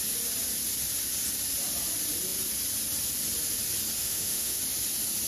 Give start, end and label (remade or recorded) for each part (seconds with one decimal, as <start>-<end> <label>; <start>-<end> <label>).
0.0-4.0 recorded; 4.0-4.6 remade; 4.6-5.3 recorded